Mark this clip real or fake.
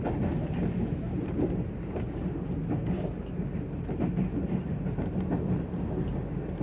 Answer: real